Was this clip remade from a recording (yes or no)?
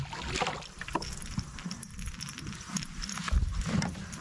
no